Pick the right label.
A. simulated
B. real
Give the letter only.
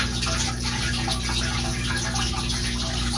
B